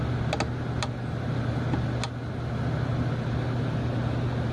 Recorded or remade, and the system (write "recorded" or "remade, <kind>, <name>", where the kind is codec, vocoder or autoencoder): recorded